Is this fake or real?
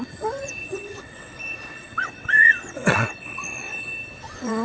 fake